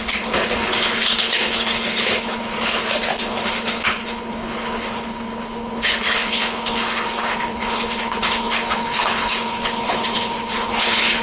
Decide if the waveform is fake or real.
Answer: fake